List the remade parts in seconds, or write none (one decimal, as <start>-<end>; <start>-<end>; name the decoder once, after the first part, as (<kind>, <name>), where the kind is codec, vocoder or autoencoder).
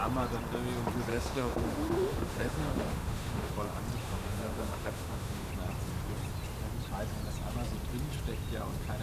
1.1-3.5 (autoencoder, DAC-VAE); 4.0-5.5